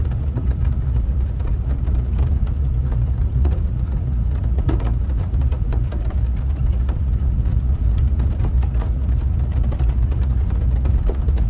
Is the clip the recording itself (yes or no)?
no